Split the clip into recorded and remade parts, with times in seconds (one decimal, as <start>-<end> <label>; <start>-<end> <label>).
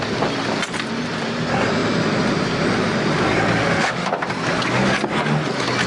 0.0-3.6 recorded; 3.6-4.1 remade; 4.1-5.9 recorded